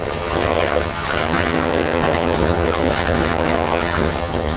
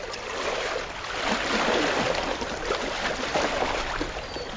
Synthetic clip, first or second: first